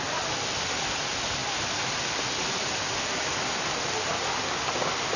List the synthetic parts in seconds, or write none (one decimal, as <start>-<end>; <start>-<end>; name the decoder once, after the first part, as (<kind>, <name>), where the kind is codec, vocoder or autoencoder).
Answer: none